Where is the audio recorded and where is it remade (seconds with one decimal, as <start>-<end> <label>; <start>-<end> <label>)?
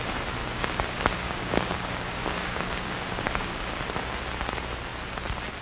0.0-0.4 recorded; 0.4-3.8 remade; 3.8-5.6 recorded